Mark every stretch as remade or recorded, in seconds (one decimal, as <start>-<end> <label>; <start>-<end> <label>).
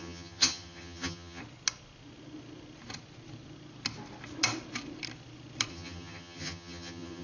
0.0-1.4 remade; 1.4-5.7 recorded; 5.7-7.2 remade